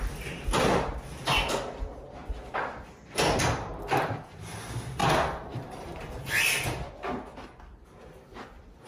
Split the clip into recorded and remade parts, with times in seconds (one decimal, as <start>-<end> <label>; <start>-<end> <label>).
0.0-2.2 recorded; 2.2-4.3 remade; 4.3-5.0 recorded; 5.0-6.9 remade; 6.9-8.9 recorded